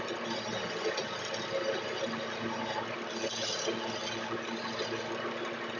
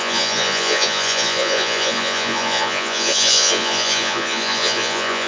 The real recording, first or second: first